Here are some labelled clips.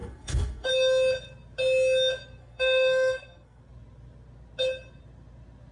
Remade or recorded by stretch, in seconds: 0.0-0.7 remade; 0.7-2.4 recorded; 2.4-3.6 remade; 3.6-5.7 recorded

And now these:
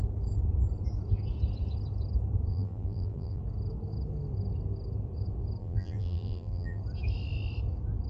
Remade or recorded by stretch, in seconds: 0.0-2.5 recorded; 2.5-3.4 remade; 3.4-5.6 recorded; 5.6-6.8 remade; 6.8-8.1 recorded

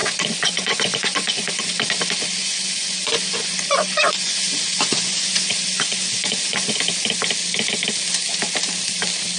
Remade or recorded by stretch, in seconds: 0.0-1.6 remade; 1.6-2.4 recorded; 2.4-6.8 remade; 6.8-9.4 recorded

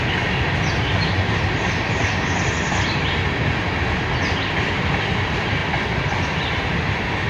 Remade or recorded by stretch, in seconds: 0.0-7.3 recorded

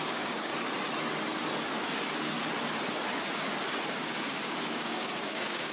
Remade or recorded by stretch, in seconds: 0.0-0.5 remade; 0.5-3.9 recorded; 3.9-5.7 remade

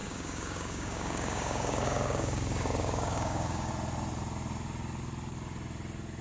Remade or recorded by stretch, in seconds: 0.0-3.7 remade; 3.7-6.2 recorded

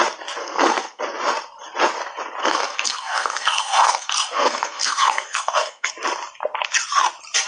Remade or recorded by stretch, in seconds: 0.0-0.4 recorded; 0.4-1.0 remade; 1.0-2.4 recorded; 2.4-5.9 remade; 5.9-7.5 recorded

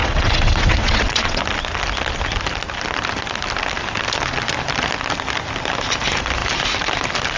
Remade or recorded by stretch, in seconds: 0.0-1.4 remade; 1.4-7.4 recorded